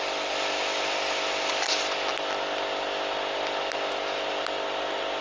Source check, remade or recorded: recorded